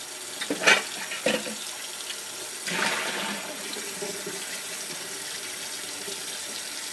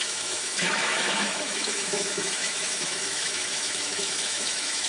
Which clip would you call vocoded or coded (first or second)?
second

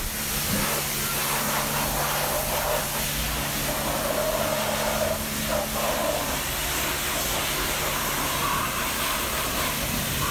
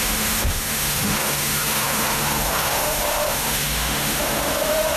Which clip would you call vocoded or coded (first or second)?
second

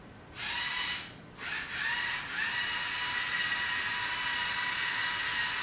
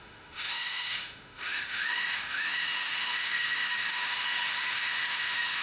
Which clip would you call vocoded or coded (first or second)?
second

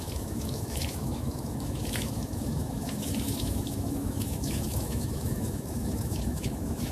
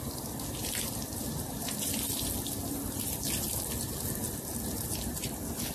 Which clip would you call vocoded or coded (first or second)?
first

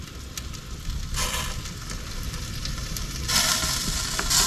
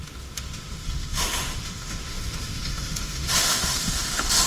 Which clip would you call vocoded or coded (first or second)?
second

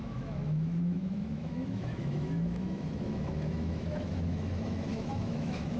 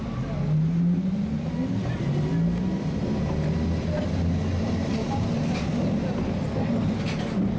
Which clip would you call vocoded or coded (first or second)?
first